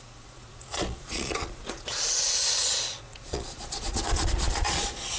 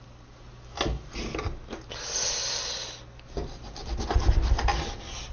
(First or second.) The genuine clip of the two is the second